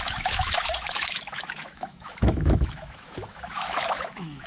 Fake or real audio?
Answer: fake